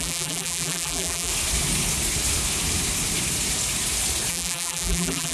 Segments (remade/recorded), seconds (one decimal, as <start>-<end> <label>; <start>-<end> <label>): 0.0-1.3 remade; 1.3-4.3 recorded; 4.3-5.3 remade